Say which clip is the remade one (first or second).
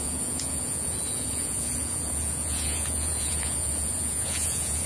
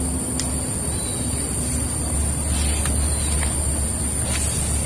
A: first